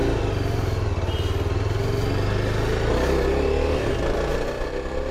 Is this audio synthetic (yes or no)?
no